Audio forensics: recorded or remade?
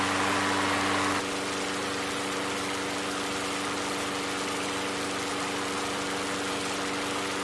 recorded